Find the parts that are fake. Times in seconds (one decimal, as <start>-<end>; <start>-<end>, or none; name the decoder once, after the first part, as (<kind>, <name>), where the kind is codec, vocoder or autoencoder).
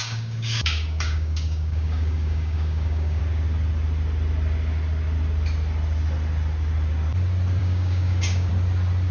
0.0-3.2 (codec, DAC); 7.6-8.5